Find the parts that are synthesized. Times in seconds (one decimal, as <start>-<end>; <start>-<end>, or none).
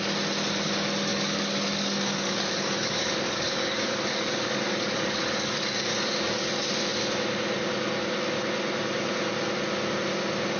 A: 1.1-5.9